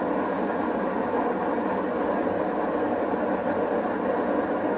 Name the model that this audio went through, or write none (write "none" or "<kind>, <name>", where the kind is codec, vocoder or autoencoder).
none